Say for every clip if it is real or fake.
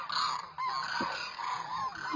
real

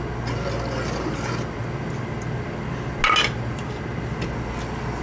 real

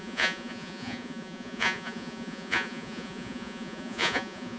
fake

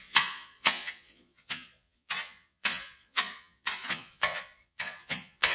fake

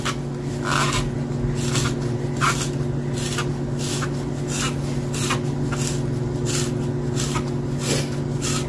real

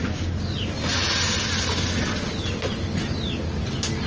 real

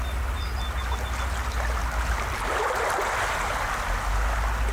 real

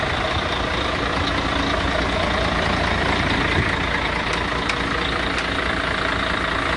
real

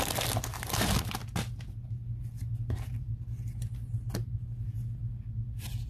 real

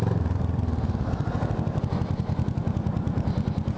real